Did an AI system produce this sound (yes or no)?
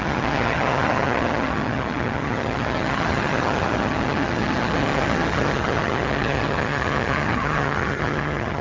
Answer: yes